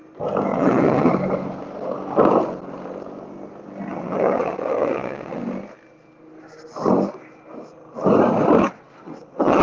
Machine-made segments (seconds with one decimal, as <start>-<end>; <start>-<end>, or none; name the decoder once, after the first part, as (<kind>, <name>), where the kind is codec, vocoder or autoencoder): 0.5-1.1 (vocoder, WaveNeXt); 3.9-5.4; 8.6-9.6